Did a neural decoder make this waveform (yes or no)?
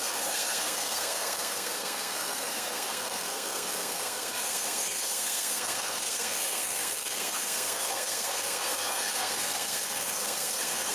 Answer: yes